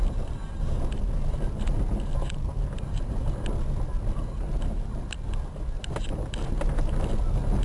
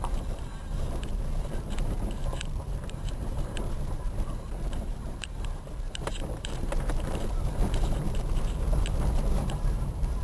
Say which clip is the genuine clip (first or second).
first